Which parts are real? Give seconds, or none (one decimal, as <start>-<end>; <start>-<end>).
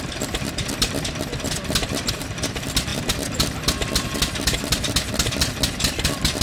0.0-6.4